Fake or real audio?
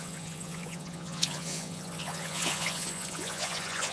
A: fake